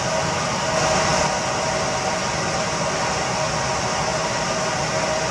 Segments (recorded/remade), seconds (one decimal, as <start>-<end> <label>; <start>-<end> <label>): 0.0-5.3 recorded